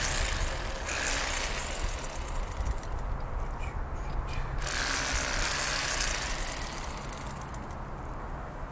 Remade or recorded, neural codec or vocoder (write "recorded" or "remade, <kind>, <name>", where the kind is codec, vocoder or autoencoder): recorded